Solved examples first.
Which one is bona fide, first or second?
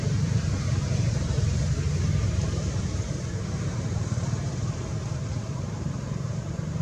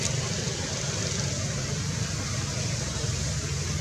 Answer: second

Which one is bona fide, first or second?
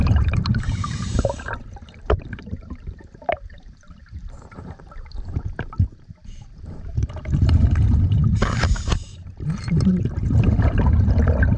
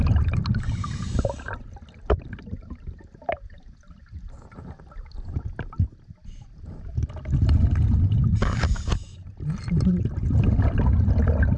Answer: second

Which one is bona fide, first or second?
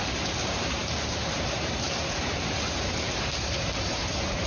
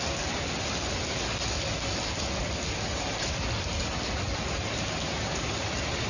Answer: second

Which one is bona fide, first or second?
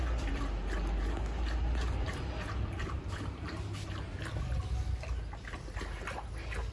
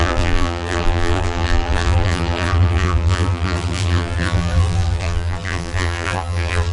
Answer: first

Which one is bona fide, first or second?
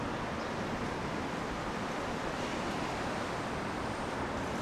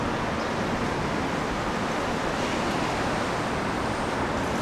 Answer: second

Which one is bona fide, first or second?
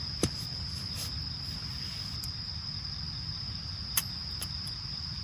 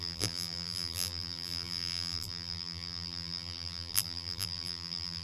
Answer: first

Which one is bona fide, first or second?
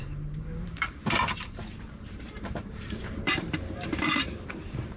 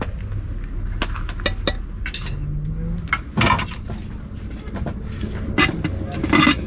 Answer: second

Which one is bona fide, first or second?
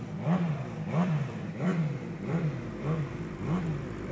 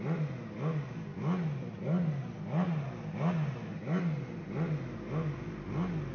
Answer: second